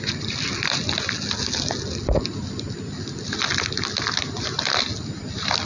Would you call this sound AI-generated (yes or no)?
no